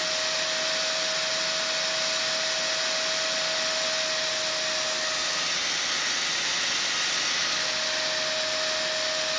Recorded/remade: recorded